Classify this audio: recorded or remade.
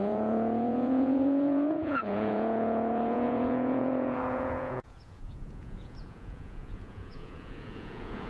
remade